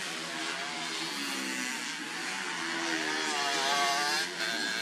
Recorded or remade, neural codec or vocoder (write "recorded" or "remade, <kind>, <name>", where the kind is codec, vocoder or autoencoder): recorded